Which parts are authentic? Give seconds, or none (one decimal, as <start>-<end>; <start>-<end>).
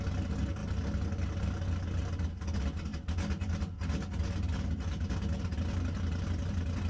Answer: 0.0-6.9